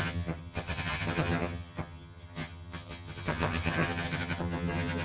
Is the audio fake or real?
fake